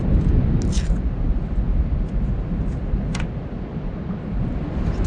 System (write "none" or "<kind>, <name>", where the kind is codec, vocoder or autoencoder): none